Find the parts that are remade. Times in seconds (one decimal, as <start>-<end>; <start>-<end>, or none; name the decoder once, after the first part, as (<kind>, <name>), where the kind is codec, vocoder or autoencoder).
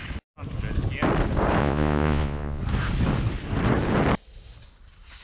1.6-2.6 (vocoder, Vocos)